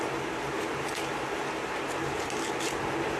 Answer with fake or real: real